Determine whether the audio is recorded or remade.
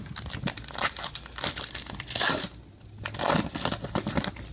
recorded